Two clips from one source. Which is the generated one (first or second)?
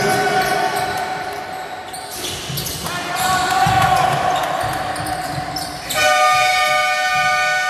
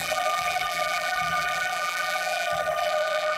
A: second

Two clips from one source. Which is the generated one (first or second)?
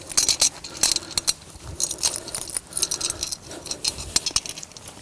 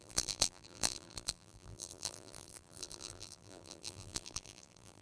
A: second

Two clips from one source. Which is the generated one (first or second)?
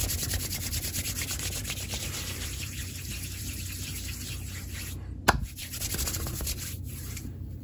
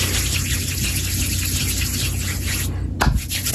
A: first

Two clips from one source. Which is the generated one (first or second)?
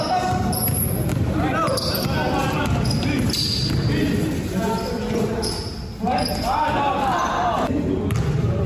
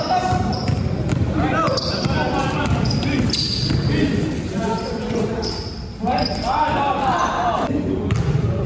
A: second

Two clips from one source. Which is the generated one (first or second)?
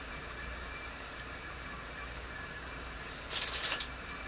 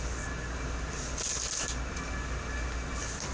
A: first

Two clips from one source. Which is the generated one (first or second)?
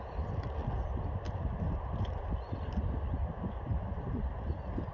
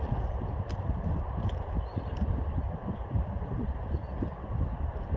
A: second